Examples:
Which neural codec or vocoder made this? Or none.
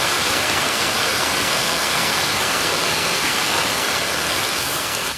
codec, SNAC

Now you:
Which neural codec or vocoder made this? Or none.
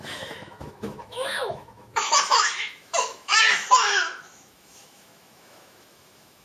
autoencoder, DAC-VAE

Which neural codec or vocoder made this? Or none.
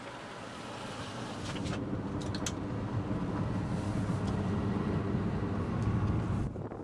none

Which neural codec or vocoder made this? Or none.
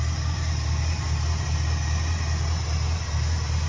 none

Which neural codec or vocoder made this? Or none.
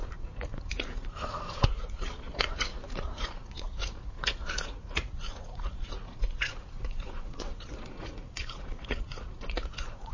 vocoder, Vocos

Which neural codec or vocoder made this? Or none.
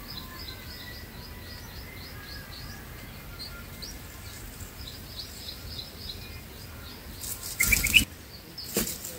none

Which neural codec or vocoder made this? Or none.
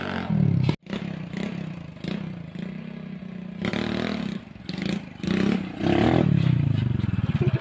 none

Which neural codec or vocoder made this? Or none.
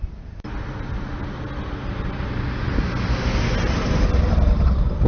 none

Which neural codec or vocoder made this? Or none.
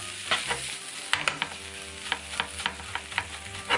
none